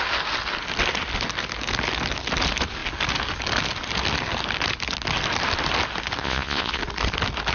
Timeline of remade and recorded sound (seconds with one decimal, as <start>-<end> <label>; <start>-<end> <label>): 0.0-6.2 recorded; 6.2-6.8 remade; 6.8-7.5 recorded